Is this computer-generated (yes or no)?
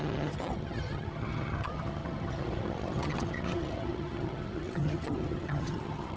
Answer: yes